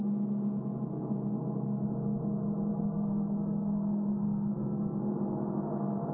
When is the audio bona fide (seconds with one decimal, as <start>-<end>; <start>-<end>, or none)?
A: 0.0-2.7; 5.0-6.1